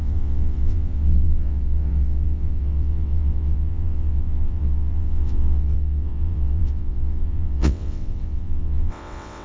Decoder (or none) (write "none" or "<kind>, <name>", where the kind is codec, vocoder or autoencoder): vocoder, WaveNeXt